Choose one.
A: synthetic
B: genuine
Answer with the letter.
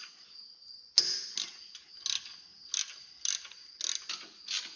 B